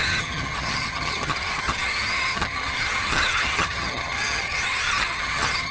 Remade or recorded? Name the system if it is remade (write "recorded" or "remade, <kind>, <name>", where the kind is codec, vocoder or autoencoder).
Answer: remade, vocoder, HiFi-GAN